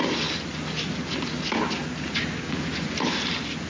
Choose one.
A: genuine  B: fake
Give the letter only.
A